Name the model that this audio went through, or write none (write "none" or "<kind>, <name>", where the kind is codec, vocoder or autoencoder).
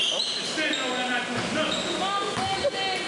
none